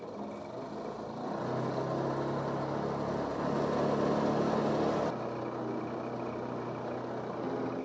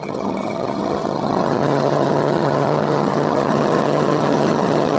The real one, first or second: first